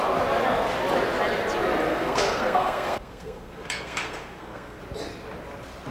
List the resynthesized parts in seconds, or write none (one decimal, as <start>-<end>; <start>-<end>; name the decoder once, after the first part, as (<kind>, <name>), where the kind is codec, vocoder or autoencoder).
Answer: 1.9-4.8 (codec, SNAC)

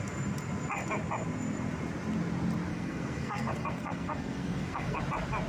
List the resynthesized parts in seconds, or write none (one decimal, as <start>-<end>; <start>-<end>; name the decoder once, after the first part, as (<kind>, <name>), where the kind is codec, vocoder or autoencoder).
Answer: 2.7-5.0 (codec, SNAC)

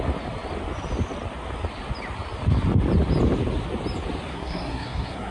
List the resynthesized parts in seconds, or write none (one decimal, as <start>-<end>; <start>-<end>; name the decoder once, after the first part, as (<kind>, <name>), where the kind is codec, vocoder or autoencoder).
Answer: 4.3-5.3 (codec, SNAC)

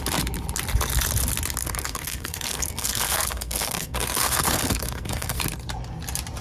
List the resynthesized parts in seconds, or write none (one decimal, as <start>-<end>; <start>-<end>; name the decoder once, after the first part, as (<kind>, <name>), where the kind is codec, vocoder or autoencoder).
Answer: 1.6-5.4 (codec, SNAC)

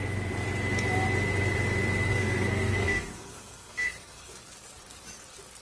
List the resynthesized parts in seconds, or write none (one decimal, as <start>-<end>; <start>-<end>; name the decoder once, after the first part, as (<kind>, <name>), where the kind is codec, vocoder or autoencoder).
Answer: 2.1-4.3 (codec, SNAC)

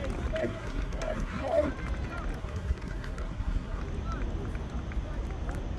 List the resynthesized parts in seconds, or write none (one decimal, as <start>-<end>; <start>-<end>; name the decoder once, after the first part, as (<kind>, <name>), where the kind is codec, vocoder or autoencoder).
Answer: 0.4-1.7 (codec, SNAC); 2.4-3.8

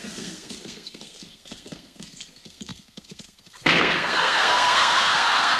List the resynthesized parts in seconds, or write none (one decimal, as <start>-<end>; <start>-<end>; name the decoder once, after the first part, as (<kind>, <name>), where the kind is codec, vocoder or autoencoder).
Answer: 0.0-5.6 (codec, SNAC)